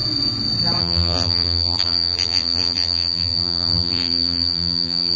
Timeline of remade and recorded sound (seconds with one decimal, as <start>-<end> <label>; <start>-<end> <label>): 0.0-0.8 recorded; 0.8-5.2 remade